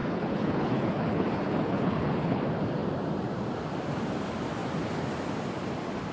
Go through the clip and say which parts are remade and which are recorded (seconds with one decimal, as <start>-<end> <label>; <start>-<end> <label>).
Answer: 0.0-2.4 remade; 2.4-6.1 recorded